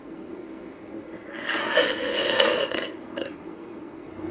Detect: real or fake fake